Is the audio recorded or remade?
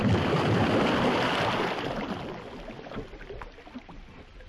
recorded